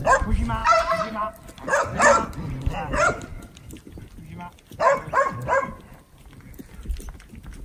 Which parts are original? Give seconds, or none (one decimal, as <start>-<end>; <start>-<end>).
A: 0.0-0.6; 1.3-7.6